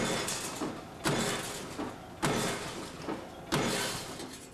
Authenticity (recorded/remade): recorded